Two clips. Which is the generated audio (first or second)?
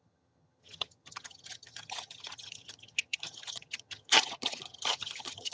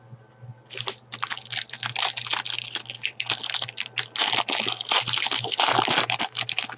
first